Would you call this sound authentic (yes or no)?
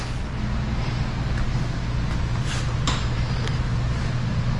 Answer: yes